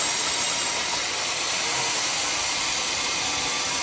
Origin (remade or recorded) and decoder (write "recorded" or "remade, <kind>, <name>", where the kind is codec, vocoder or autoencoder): recorded